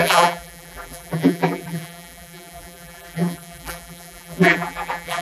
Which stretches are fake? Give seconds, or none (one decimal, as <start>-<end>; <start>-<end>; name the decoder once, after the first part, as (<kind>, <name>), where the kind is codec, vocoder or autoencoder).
0.0-5.2 (vocoder, BigVGAN v2)